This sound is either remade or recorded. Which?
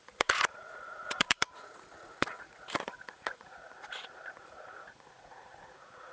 remade